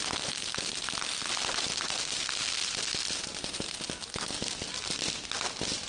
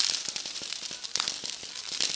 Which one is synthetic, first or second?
second